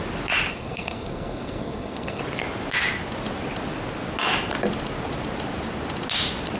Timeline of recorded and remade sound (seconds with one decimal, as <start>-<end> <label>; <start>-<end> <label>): 0.0-0.5 recorded; 0.5-2.2 remade; 2.2-6.6 recorded